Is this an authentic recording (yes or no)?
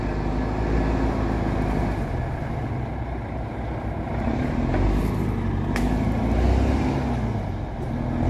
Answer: yes